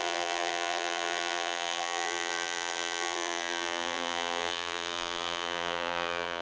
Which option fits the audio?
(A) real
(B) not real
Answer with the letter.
B